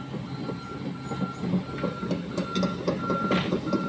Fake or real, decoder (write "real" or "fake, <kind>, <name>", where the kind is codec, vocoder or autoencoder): real